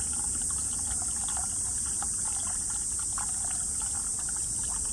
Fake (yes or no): no